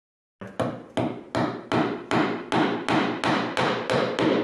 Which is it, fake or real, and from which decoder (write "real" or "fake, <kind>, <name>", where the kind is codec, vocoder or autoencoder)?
real